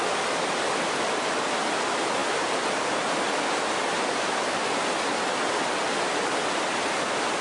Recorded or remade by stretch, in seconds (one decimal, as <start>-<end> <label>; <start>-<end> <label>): 0.0-7.4 recorded